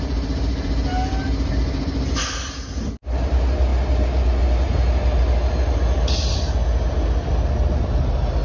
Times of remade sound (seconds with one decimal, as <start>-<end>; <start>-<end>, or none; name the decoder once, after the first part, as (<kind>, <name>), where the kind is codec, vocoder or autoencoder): none